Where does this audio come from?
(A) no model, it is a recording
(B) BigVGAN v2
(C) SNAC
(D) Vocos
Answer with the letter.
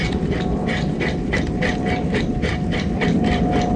A